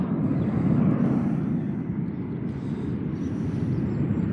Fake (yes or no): no